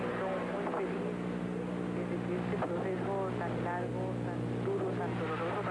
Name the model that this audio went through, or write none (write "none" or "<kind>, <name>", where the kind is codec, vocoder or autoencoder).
none